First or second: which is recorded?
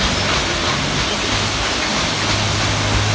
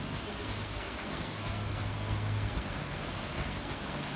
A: first